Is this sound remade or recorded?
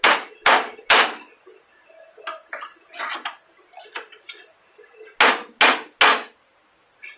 recorded